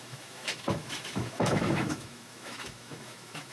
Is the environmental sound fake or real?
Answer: fake